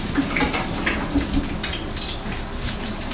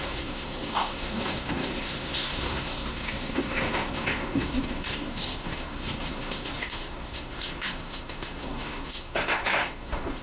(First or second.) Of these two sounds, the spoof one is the second